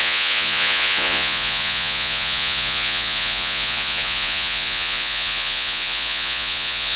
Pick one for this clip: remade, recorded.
remade